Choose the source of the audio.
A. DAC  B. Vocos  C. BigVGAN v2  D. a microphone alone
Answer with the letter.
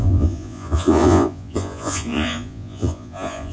B